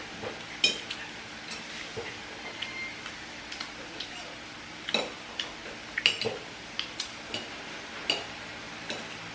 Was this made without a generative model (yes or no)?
yes